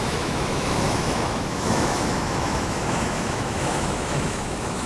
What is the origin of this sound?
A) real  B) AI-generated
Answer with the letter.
B